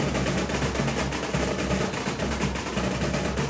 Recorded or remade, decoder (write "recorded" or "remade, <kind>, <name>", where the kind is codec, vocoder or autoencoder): recorded